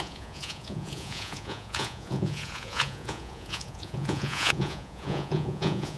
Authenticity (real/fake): fake